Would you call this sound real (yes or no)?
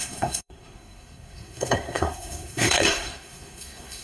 no